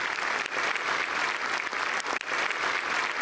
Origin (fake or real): real